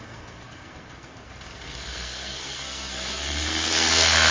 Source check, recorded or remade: remade